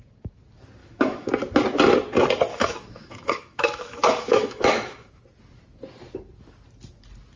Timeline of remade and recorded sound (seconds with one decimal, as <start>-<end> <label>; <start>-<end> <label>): 0.0-0.8 recorded; 0.8-1.3 remade; 1.3-2.5 recorded; 2.5-5.2 remade; 5.2-7.4 recorded